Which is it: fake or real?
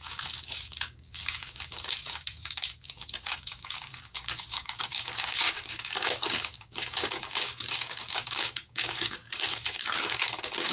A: fake